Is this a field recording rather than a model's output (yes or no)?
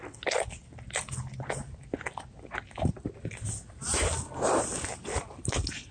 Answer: yes